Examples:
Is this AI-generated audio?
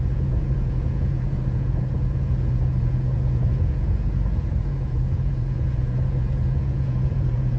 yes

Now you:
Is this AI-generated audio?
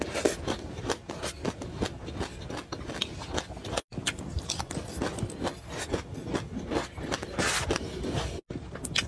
no